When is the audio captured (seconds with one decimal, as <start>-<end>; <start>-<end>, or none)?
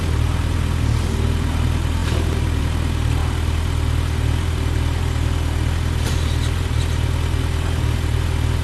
0.0-8.6